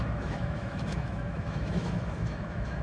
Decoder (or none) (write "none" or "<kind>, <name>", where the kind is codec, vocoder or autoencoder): autoencoder, DAC-VAE